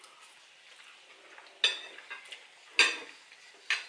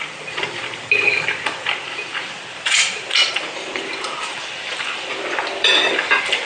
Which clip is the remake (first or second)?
second